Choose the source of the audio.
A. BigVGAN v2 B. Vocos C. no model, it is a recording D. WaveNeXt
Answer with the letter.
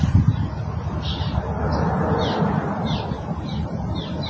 C